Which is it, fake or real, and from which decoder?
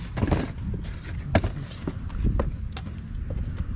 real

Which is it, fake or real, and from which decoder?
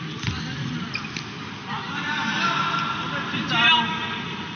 real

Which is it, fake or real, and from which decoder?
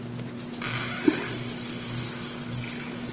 real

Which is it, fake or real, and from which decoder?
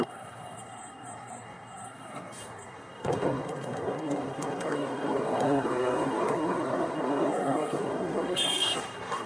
fake, codec, SNAC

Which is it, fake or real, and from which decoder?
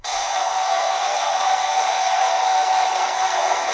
fake, codec, SNAC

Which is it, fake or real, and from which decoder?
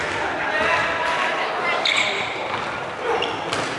real